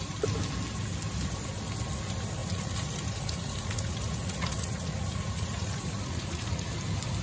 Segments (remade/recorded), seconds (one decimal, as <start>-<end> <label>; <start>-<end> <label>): 0.0-2.4 recorded; 2.4-6.7 remade; 6.7-7.2 recorded